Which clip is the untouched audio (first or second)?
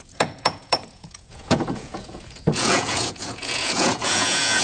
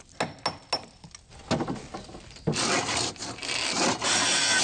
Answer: second